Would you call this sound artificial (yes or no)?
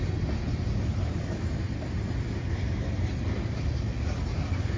yes